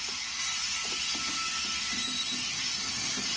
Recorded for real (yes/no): yes